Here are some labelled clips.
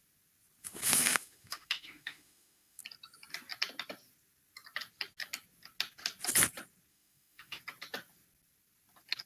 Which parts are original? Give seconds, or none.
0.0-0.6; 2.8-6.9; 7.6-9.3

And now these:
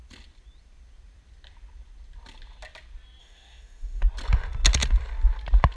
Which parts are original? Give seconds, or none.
0.0-3.2; 4.0-5.8

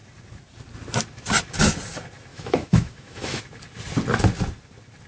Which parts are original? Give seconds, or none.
0.0-2.3; 3.4-5.1

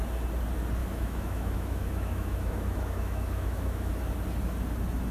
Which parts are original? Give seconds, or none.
0.0-0.8; 3.9-5.1

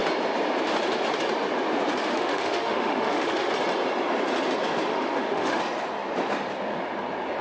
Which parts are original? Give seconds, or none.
0.0-2.1; 3.5-4.9; 5.6-7.4

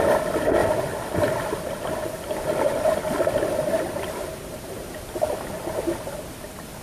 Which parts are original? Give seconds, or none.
0.0-6.8